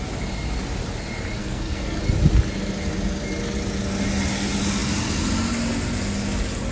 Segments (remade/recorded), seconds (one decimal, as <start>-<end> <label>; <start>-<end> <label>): 0.0-1.4 recorded; 1.4-2.0 remade; 2.0-6.7 recorded